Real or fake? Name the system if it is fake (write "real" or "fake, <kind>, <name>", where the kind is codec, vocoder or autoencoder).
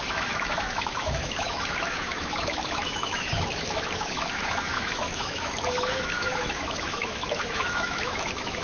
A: fake, autoencoder, DAC-VAE